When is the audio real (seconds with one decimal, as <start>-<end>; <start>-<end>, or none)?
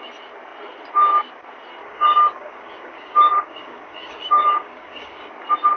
0.0-1.8; 5.3-5.8